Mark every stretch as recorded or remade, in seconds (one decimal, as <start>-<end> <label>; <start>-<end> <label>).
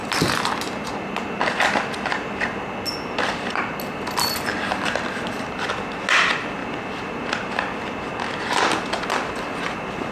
0.0-1.1 remade; 1.1-4.5 recorded; 4.5-5.7 remade; 5.7-6.6 recorded; 6.6-7.7 remade; 7.7-10.1 recorded